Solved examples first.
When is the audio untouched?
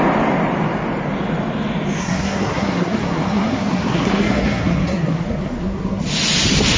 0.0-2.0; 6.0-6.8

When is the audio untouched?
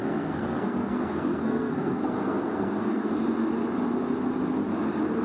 3.1-5.2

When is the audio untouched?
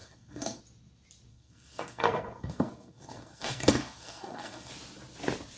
0.6-1.3; 4.7-5.6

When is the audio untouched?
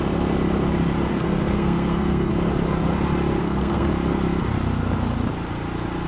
0.0-1.1; 2.3-3.4; 3.9-6.1